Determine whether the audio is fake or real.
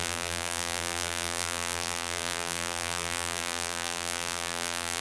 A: fake